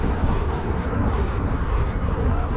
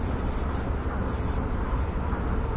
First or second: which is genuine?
second